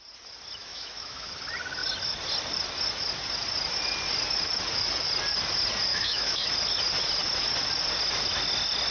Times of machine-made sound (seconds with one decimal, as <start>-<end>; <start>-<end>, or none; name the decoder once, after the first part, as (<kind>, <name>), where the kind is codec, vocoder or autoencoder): 0.6-1.3 (autoencoder, DAC-VAE); 5.9-6.5

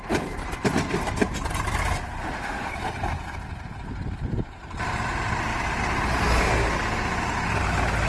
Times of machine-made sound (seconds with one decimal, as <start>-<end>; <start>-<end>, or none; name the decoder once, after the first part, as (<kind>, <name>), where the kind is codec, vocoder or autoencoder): 2.2-2.7 (autoencoder, DAC-VAE)

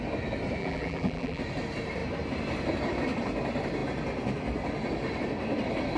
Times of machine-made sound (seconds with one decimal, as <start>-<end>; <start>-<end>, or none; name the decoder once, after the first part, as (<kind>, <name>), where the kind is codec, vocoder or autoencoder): 0.6-1.4 (vocoder, BigVGAN v2)

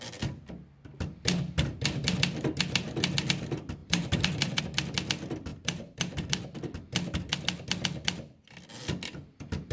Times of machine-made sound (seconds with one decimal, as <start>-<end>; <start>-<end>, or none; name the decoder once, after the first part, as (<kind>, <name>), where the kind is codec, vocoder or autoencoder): 3.8-4.6 (vocoder, BigVGAN v2); 5.5-6.1

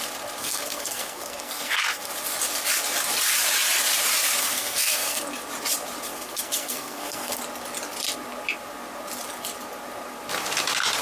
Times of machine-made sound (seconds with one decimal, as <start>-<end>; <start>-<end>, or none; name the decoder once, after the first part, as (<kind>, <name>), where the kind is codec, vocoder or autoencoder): 0.4-2.1 (codec, SNAC); 4.4-5.2; 6.1-7.4